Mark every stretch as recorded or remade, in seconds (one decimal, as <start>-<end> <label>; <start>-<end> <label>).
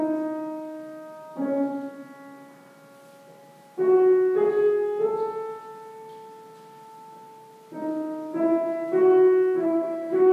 0.0-9.6 recorded; 9.6-10.3 remade